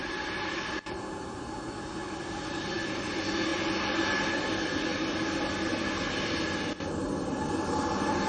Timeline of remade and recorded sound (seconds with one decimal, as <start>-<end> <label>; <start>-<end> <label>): 0.0-8.3 recorded